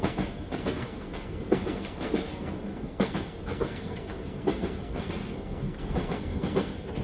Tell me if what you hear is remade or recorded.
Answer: remade